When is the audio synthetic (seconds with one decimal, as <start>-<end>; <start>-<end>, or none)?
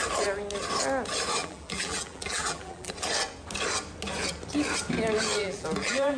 1.4-2.9; 5.4-6.2